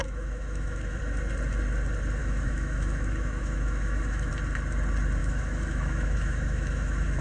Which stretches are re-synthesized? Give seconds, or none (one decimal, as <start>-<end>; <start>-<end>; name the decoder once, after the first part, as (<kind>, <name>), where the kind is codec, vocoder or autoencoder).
0.0-1.0 (autoencoder, DAC-VAE); 2.2-4.3; 5.2-7.2